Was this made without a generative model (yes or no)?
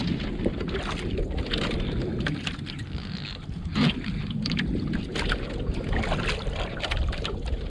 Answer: yes